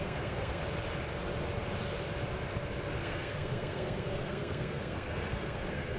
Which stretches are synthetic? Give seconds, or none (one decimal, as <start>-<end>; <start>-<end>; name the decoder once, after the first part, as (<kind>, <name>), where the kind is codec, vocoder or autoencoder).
0.0-0.6 (codec, SNAC); 3.0-6.0